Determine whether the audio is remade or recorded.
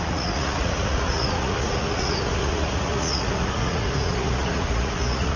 remade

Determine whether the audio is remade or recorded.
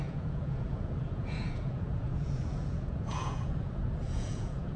remade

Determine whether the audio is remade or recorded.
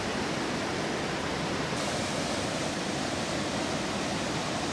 recorded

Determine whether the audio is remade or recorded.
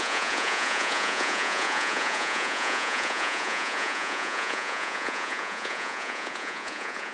remade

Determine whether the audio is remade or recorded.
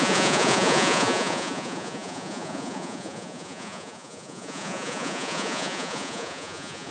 remade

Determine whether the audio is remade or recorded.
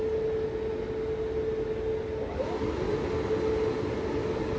recorded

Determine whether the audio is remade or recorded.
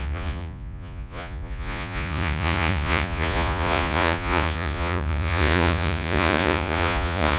remade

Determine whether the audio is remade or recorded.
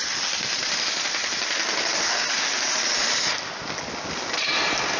recorded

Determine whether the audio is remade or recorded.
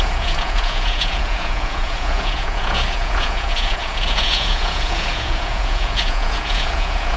remade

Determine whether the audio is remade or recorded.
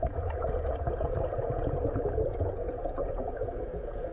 remade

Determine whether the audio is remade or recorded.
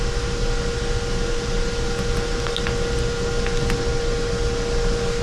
recorded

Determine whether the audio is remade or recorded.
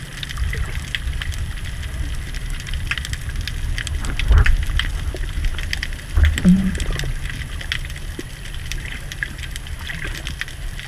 recorded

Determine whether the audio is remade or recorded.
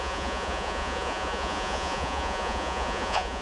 remade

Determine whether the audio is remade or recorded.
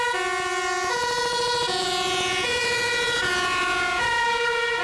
remade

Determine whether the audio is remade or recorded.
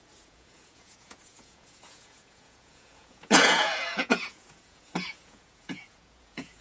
remade